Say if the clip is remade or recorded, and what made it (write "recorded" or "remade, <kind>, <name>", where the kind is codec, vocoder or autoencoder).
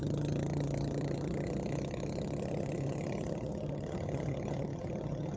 remade, vocoder, HiFi-GAN